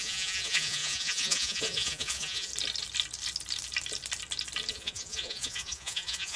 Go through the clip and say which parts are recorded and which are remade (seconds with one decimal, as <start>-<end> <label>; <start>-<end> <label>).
0.0-2.5 remade; 2.5-4.7 recorded; 4.7-6.4 remade